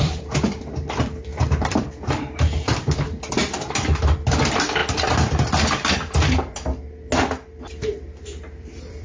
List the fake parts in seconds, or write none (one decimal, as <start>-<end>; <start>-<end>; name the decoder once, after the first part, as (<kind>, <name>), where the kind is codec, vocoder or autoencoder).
0.0-4.8 (vocoder, BigVGAN v2); 8.2-9.0